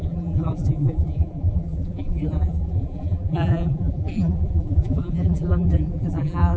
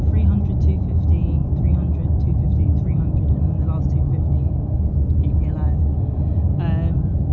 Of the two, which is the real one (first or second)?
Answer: second